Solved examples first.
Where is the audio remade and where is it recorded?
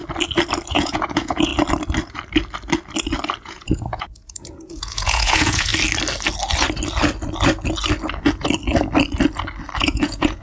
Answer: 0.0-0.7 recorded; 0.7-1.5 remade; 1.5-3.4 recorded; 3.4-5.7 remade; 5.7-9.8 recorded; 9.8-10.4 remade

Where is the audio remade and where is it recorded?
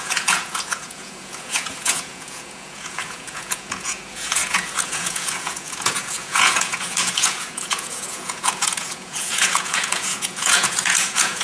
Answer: 0.0-11.4 remade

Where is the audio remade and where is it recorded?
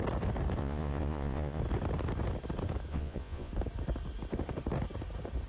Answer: 0.0-0.6 recorded; 0.6-1.6 remade; 1.6-2.9 recorded; 2.9-3.5 remade; 3.5-5.5 recorded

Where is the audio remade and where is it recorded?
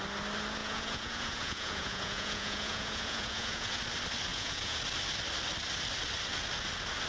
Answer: 0.0-0.6 recorded; 0.6-3.8 remade; 3.8-4.3 recorded; 4.3-4.8 remade; 4.8-7.1 recorded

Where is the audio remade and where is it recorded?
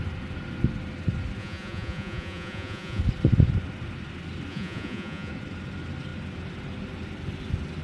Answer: 0.0-1.4 recorded; 1.4-3.0 remade; 3.0-4.5 recorded; 4.5-5.3 remade; 5.3-7.8 recorded